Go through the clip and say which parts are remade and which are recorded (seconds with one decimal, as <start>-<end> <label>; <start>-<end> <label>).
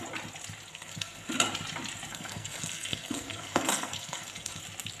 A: 0.0-0.7 recorded; 0.7-1.3 remade; 1.3-2.1 recorded; 2.1-4.6 remade; 4.6-5.0 recorded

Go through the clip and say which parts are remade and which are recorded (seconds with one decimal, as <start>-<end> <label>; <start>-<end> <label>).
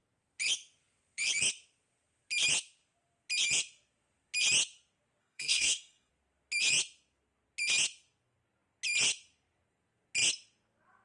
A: 0.0-5.2 recorded; 5.2-6.1 remade; 6.1-11.0 recorded